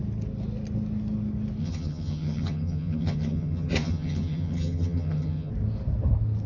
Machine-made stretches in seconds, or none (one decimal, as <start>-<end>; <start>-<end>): 1.6-5.5